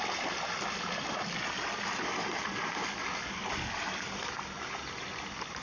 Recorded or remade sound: recorded